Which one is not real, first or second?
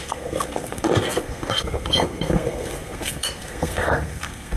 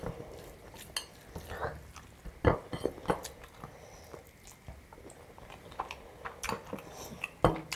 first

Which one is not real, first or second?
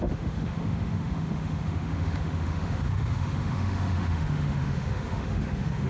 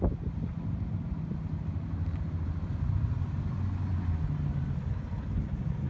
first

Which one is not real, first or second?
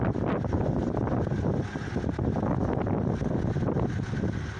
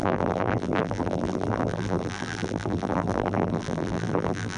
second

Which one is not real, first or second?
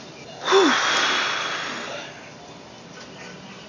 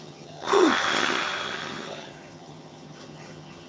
second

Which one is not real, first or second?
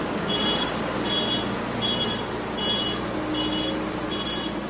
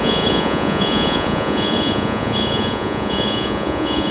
second